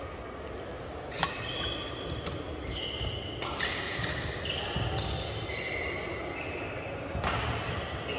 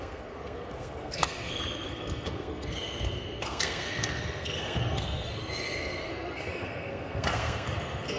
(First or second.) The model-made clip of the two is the second